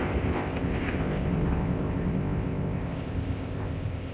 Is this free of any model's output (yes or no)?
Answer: no